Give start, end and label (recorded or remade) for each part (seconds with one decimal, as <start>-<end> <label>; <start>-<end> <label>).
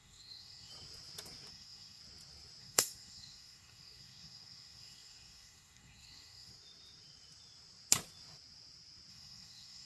0.0-0.7 remade; 0.7-1.5 recorded; 1.5-2.0 remade; 2.0-2.6 recorded; 2.6-6.5 remade; 6.5-9.1 recorded; 9.1-9.9 remade